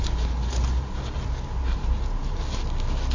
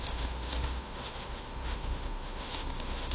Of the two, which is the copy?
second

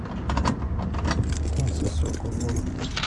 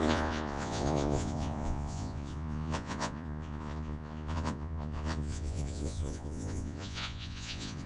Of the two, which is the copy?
second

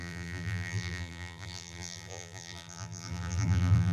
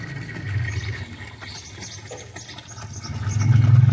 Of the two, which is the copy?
first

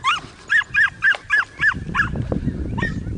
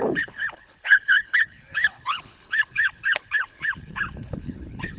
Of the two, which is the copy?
second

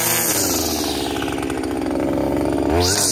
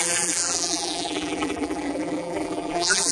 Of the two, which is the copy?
second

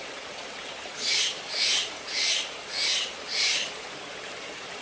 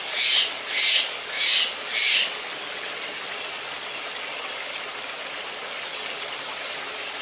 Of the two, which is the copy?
first